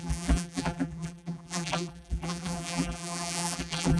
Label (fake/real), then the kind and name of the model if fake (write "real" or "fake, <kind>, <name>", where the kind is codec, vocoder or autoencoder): fake, vocoder, BigVGAN v2